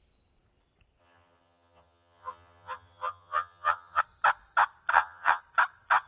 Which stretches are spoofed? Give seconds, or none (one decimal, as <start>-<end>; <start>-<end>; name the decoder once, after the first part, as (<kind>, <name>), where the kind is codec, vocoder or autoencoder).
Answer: 1.0-4.0 (vocoder, HiFi-GAN); 4.9-5.4